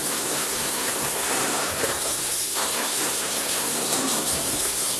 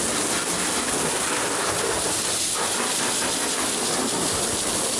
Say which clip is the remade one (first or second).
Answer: first